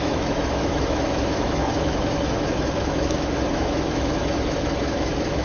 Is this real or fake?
fake